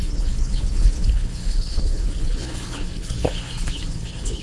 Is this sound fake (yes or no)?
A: yes